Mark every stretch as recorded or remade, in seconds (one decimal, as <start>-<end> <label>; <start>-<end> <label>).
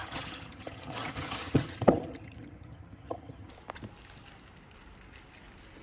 0.0-3.5 remade; 3.5-5.8 recorded